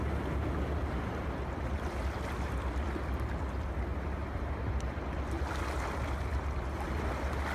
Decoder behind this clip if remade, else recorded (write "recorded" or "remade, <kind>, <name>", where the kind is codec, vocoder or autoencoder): recorded